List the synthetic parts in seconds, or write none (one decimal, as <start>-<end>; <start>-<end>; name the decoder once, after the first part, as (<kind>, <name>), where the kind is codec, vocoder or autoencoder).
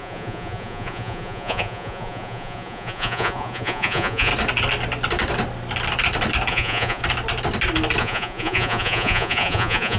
0.0-4.3 (vocoder, Vocos); 6.5-7.0; 8.0-10.0